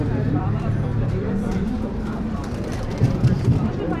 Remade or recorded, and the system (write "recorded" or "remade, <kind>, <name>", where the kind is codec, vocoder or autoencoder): remade, vocoder, BigVGAN v2